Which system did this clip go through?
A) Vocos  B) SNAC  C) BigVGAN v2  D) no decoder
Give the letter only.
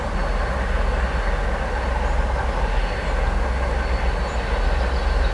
D